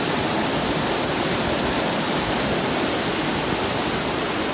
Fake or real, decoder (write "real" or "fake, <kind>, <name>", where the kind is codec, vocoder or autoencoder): real